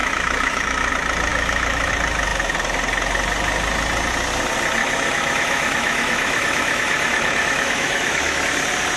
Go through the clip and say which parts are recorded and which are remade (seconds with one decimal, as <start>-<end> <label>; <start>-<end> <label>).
0.0-0.9 remade; 0.9-1.3 recorded; 1.3-1.9 remade; 1.9-4.8 recorded; 4.8-8.4 remade; 8.4-9.0 recorded